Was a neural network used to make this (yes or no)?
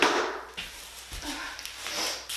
no